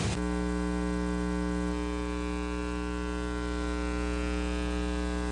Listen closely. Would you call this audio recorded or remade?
recorded